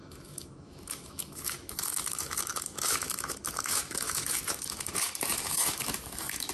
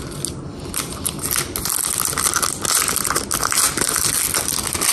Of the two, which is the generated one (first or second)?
first